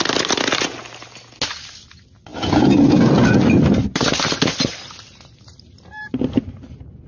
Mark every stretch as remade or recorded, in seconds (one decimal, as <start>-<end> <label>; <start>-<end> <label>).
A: 0.0-7.1 recorded